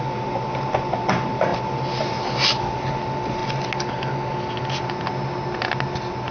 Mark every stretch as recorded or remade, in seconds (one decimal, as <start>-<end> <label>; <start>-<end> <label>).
0.0-6.3 recorded